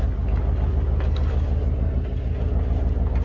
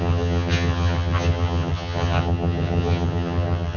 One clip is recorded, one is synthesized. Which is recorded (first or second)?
first